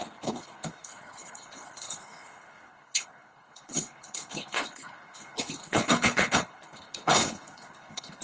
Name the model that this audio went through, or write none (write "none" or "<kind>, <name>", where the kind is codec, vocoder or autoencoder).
codec, HILCodec